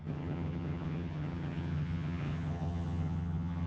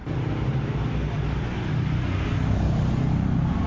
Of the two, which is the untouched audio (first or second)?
second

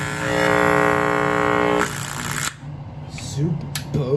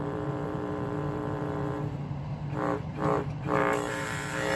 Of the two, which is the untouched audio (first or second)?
first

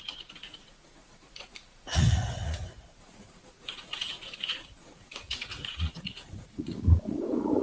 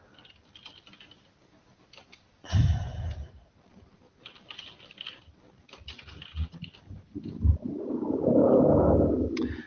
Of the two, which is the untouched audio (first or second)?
second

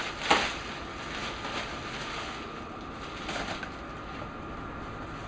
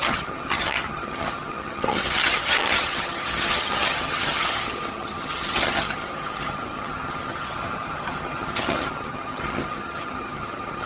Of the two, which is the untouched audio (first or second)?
first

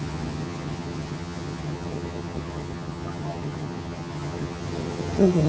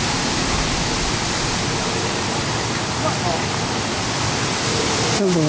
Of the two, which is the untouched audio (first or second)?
second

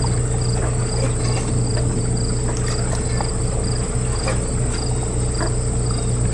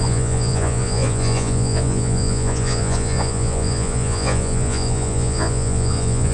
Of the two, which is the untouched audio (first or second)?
first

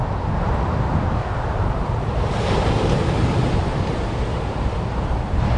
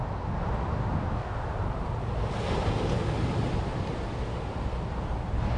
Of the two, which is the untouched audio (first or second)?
second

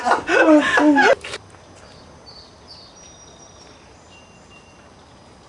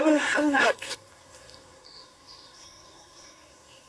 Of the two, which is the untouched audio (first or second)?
first